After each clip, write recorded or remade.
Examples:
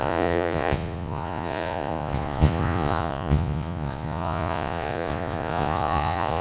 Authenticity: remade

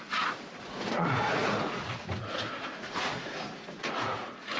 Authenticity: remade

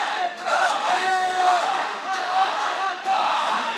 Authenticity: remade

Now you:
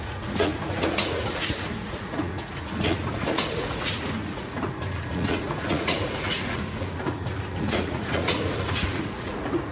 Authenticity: remade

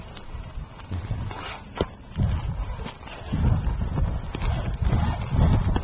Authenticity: recorded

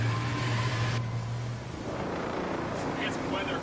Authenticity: remade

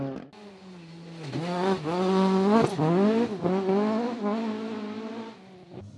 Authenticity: recorded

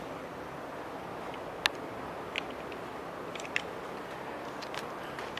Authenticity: recorded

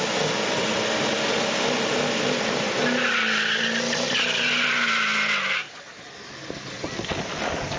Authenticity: recorded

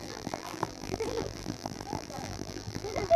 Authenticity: remade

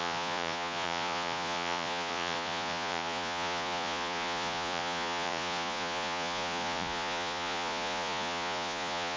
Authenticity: remade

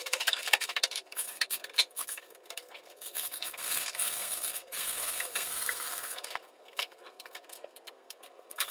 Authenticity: remade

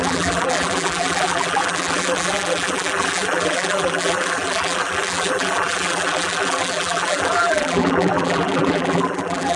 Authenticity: remade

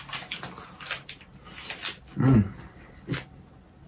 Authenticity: recorded